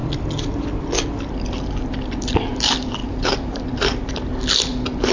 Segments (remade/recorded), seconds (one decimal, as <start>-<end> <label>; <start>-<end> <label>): 0.0-3.0 recorded; 3.0-3.6 remade; 3.6-5.1 recorded